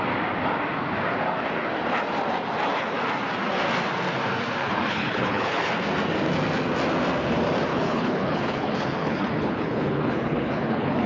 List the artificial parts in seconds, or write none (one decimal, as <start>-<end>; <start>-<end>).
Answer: 4.6-5.7; 7.7-11.1